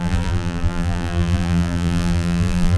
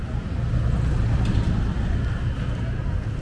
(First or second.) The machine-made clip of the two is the first